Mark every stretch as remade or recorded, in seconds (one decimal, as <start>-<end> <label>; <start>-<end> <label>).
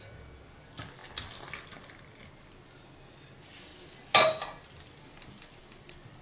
0.0-6.2 recorded